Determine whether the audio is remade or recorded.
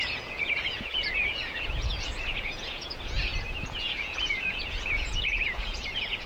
remade